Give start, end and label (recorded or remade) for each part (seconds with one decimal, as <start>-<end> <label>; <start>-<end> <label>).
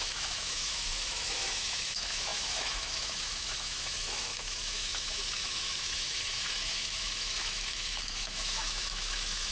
0.0-9.5 remade